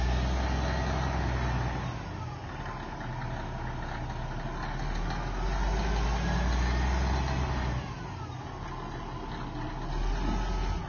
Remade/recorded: recorded